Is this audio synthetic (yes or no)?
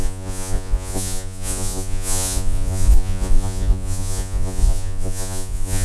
yes